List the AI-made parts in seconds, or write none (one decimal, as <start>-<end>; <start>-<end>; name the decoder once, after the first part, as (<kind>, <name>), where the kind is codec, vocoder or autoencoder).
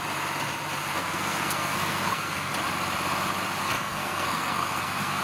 0.9-2.5 (codec, SNAC); 3.6-5.2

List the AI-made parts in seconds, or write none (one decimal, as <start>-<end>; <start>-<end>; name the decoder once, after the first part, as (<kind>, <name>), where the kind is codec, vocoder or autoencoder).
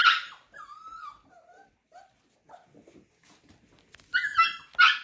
0.0-2.3 (vocoder, BigVGAN v2)